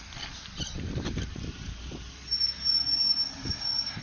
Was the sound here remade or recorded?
recorded